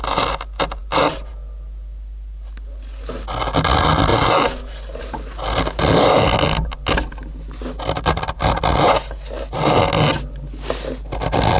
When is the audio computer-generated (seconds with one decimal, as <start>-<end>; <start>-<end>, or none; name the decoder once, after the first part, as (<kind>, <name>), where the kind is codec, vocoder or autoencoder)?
none